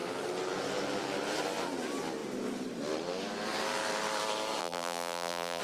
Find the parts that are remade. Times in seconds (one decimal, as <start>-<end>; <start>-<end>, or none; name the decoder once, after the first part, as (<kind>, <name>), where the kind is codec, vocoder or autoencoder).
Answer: 4.6-5.6 (vocoder, BigVGAN v2)